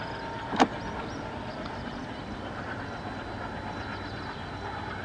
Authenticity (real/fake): real